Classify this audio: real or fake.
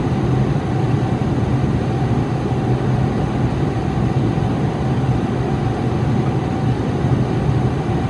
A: real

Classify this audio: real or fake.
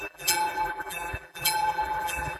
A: fake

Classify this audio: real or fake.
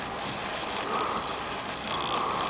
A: real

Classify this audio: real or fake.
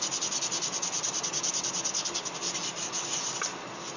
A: real